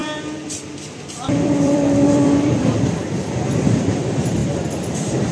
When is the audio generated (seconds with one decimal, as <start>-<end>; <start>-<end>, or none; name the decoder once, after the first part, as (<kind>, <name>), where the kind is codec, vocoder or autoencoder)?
0.0-5.3 (vocoder, BigVGAN v2)